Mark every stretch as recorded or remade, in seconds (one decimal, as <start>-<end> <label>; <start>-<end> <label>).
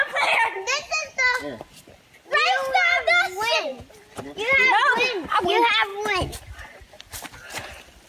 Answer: 0.0-8.1 recorded